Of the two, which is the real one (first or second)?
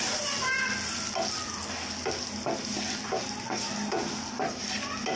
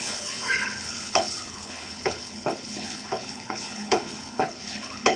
first